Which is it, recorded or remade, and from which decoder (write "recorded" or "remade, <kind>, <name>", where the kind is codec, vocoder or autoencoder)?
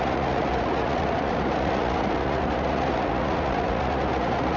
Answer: remade, vocoder, Vocos